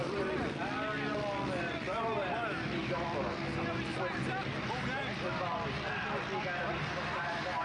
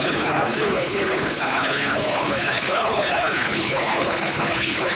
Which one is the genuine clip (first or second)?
first